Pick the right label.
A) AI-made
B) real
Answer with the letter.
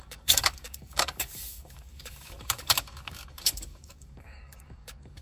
A